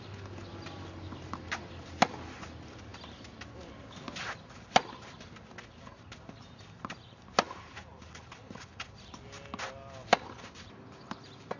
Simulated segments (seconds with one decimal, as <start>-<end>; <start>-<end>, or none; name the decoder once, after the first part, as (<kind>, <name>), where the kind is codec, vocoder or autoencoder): none